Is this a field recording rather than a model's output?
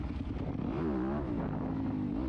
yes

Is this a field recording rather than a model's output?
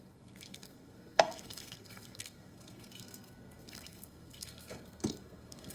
no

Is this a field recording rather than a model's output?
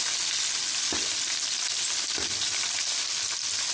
yes